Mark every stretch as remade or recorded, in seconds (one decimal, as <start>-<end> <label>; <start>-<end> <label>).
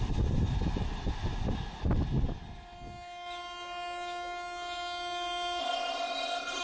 0.0-5.6 recorded; 5.6-6.6 remade